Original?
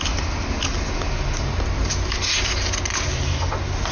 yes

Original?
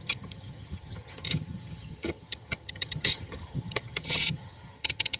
no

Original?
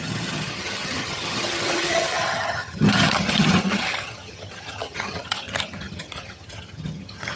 no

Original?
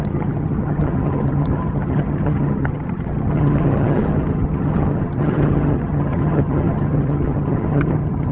no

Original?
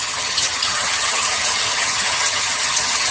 no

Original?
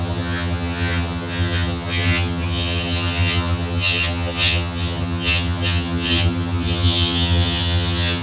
no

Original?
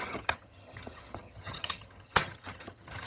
no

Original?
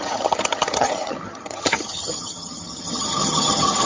no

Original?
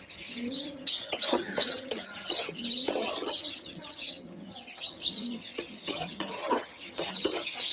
no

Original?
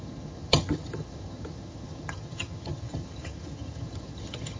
no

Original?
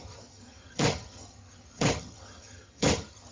no